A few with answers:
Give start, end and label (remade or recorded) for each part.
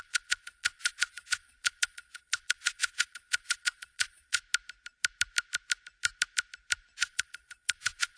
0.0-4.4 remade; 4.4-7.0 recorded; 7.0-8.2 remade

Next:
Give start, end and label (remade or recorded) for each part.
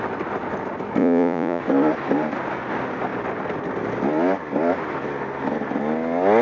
0.0-1.0 recorded; 1.0-1.6 remade; 1.6-6.4 recorded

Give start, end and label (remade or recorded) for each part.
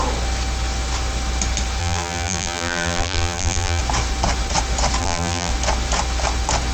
0.0-1.8 recorded; 1.8-3.8 remade; 3.8-5.0 recorded; 5.0-5.5 remade; 5.5-6.7 recorded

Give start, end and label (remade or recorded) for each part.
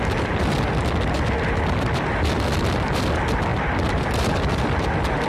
0.0-5.3 recorded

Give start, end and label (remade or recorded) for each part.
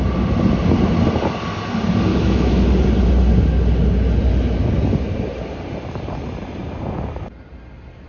0.0-2.1 recorded; 2.1-2.6 remade; 2.6-8.1 recorded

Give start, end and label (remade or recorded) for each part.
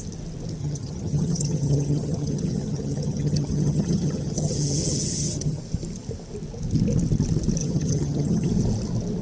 0.0-0.6 recorded; 0.6-5.6 remade; 5.6-7.6 recorded; 7.6-8.5 remade; 8.5-9.2 recorded